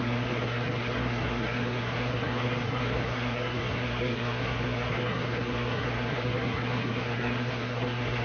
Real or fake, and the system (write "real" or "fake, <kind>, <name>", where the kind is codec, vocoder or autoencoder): fake, codec, SNAC